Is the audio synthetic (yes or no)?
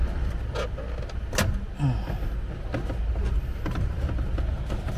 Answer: no